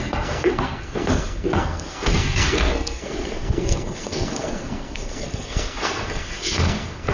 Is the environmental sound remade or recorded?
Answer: remade